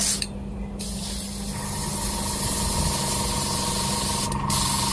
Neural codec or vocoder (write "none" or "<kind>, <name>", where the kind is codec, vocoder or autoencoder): none